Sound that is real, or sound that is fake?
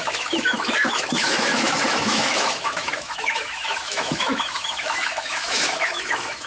fake